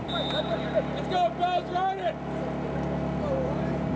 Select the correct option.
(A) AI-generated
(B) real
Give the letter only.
B